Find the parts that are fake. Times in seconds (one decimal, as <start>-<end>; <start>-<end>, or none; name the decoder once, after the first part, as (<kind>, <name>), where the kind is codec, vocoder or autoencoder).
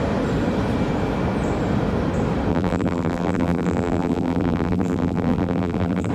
2.5-6.1 (vocoder, BigVGAN v2)